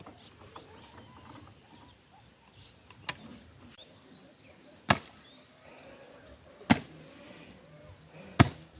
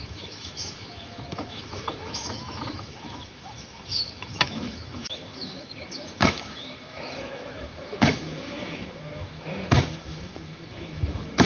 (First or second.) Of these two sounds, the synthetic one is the second